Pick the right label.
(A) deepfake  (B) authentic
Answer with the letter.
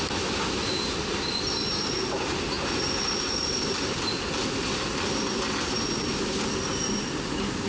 B